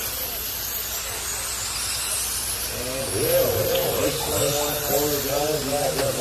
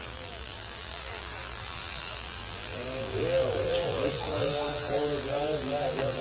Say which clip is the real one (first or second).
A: first